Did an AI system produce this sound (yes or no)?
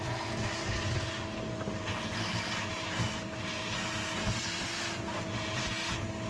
no